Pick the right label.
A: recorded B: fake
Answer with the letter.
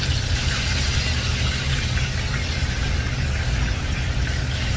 A